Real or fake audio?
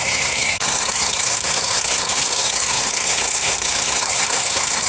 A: fake